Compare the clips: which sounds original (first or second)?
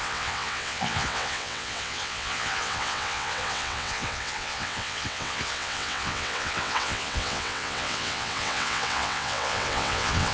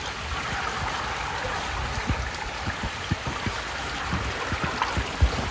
second